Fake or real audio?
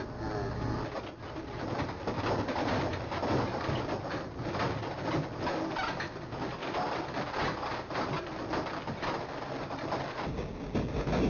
real